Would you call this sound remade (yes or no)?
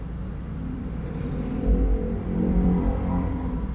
yes